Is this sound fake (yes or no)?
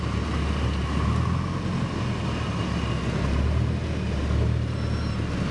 no